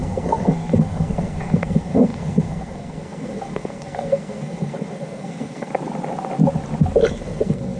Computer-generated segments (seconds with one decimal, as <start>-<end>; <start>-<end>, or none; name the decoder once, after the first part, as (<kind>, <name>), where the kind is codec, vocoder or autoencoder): 0.0-5.7 (codec, SNAC); 7.1-7.8